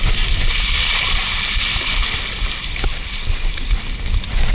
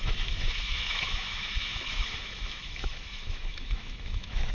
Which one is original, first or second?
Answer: first